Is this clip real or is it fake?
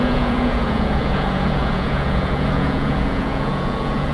fake